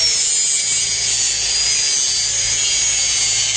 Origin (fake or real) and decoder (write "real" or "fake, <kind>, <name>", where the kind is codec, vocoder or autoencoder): real